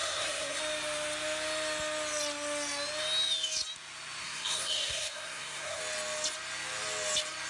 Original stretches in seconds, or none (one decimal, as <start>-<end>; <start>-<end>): 0.6-4.2; 5.8-7.5

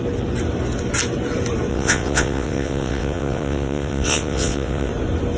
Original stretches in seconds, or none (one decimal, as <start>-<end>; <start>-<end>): 0.0-1.7; 4.9-5.4

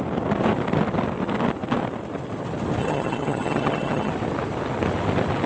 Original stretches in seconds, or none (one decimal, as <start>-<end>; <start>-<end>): 0.0-2.8; 4.1-5.5

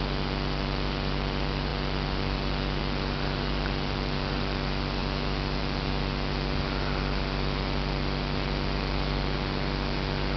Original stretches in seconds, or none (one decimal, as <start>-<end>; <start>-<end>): 5.0-5.6

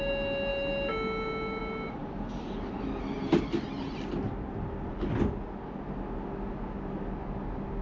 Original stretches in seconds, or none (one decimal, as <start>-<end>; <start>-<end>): 0.0-7.8